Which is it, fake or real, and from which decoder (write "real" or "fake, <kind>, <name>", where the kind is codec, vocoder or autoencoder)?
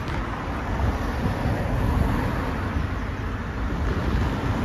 real